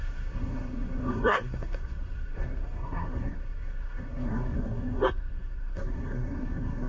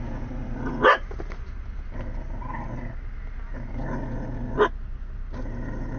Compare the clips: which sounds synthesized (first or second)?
first